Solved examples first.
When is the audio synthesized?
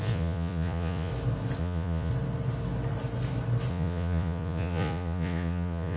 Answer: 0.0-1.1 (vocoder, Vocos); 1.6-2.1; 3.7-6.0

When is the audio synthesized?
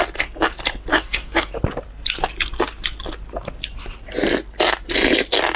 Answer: 0.9-1.5 (codec, DAC)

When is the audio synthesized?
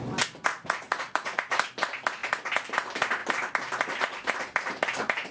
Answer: 0.5-1.5 (vocoder, Vocos)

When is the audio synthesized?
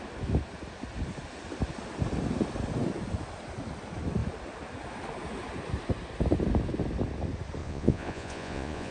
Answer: 7.6-8.9 (vocoder, Vocos)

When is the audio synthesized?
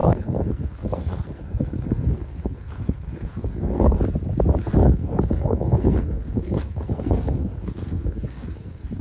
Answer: 0.0-4.0 (codec, SNAC); 4.8-9.0